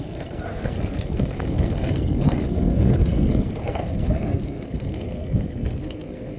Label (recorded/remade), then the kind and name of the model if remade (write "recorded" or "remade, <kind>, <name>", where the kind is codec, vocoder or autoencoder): remade, codec, SNAC